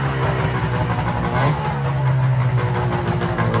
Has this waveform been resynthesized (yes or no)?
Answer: no